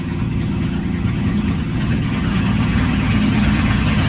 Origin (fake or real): fake